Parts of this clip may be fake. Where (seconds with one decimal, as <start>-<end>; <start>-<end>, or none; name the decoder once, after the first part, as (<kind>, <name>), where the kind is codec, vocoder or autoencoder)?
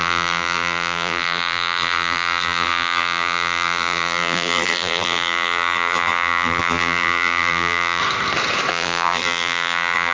0.0-8.0 (vocoder, BigVGAN v2); 8.7-10.1